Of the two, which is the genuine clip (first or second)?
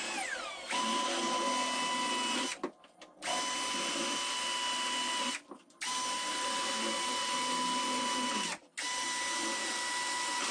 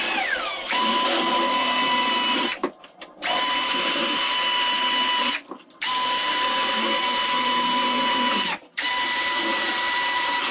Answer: first